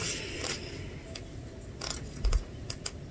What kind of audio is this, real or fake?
real